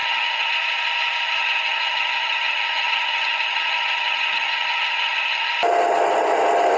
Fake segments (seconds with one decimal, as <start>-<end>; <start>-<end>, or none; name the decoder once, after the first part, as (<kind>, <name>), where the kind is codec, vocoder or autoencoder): 0.0-0.5 (vocoder, HiFi-GAN); 1.4-5.5